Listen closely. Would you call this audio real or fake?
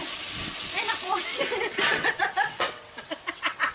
fake